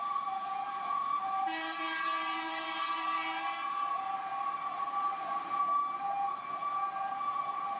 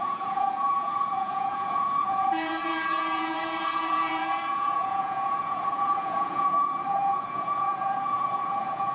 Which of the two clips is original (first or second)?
first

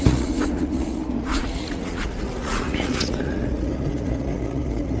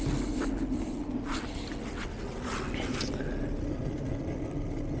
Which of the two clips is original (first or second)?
second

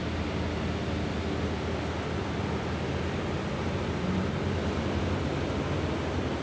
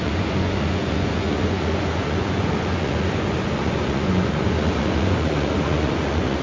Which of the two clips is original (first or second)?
first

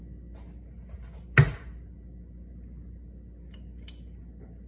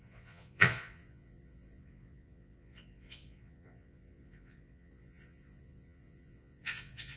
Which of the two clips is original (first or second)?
first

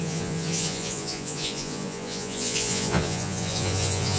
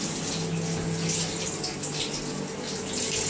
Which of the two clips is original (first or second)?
second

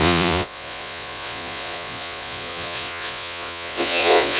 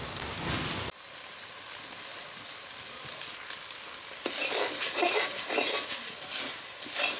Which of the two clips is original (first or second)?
second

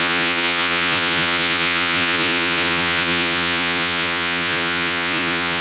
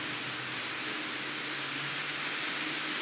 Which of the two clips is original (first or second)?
second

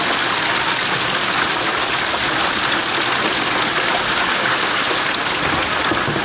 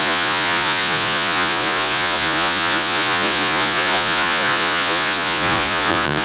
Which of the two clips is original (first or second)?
first